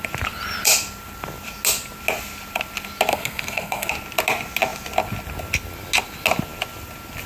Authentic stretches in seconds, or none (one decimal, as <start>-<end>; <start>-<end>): 0.0-3.1; 3.9-7.3